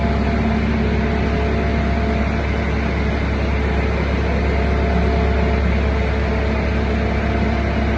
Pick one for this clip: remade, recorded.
recorded